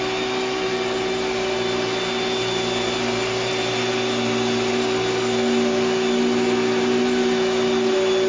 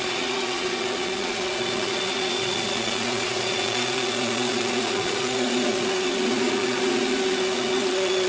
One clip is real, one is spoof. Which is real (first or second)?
first